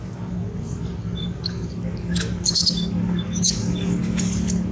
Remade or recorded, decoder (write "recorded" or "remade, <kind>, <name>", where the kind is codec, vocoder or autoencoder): remade, codec, DAC